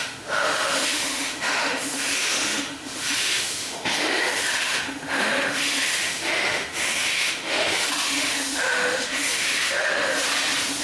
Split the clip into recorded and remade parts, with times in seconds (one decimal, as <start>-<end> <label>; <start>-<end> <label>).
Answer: 0.0-10.1 remade; 10.1-10.8 recorded